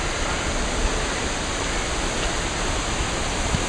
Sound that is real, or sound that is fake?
real